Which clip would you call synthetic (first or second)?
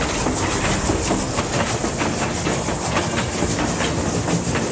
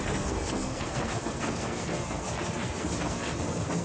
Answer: second